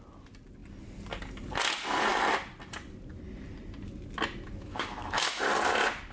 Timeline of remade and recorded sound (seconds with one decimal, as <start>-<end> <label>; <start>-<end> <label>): 0.0-4.7 recorded; 4.7-5.4 remade; 5.4-6.1 recorded